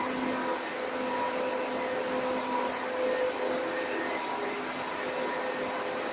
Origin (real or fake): real